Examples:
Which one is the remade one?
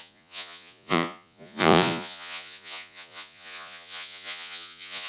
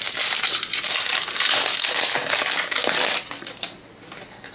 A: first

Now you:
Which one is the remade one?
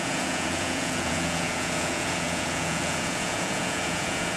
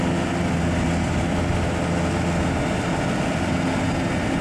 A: first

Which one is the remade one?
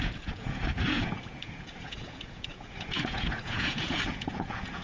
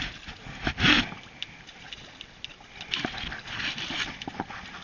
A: first